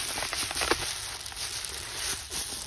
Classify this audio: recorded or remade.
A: recorded